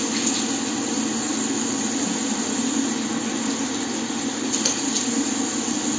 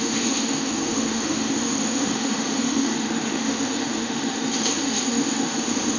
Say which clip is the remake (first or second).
second